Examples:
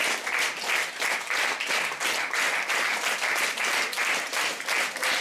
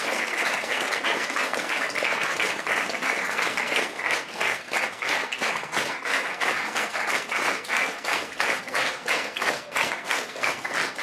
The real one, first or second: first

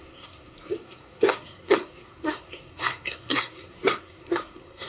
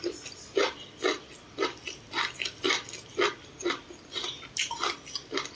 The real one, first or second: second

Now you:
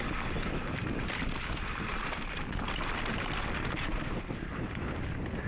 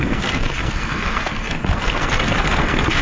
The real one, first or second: first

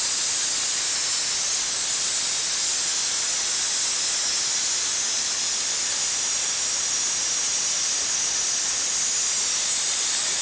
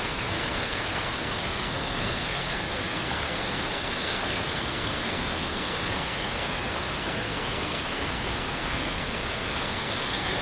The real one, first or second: first